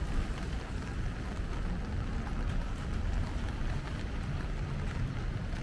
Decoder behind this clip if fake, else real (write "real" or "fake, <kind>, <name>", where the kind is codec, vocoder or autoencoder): real